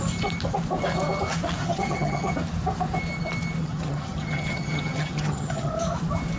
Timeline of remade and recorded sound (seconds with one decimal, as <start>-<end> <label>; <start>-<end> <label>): 0.0-1.6 recorded; 1.6-2.3 remade; 2.3-3.6 recorded; 3.6-5.7 remade; 5.7-6.4 recorded